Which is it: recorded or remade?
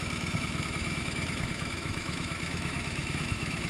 remade